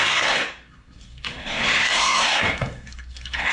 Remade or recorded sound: remade